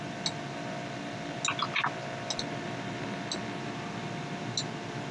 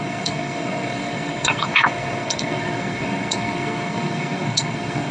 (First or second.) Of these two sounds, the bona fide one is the first